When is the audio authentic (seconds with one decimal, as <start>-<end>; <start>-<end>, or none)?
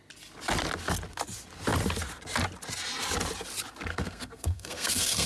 0.0-3.9